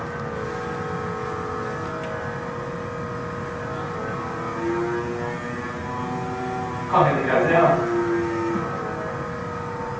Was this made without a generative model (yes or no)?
yes